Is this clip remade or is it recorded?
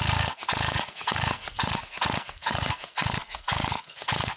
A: remade